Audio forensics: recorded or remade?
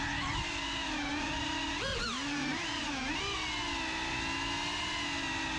recorded